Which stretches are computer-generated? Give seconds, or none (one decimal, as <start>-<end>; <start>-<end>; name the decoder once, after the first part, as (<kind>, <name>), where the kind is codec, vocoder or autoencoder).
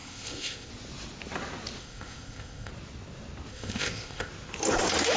0.0-0.7 (codec, ZipCodec); 1.8-2.7; 3.5-4.3